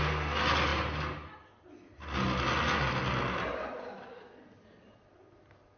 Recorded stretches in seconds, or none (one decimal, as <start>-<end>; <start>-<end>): 0.0-5.8